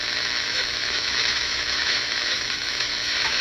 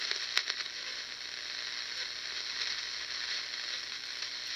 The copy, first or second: first